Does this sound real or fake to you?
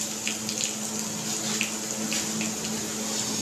real